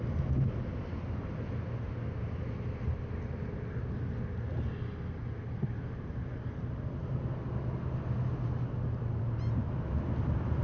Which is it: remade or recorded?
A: recorded